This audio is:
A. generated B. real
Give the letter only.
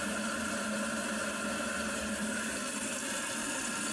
A